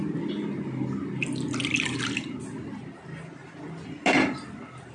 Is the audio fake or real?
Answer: real